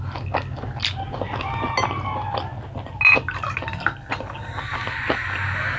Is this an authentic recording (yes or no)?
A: yes